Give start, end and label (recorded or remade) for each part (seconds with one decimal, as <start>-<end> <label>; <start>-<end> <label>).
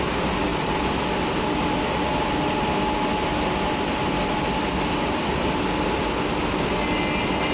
0.0-7.5 recorded